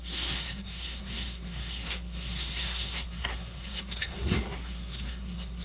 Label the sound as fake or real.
fake